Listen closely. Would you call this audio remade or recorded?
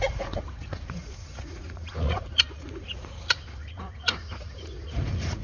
remade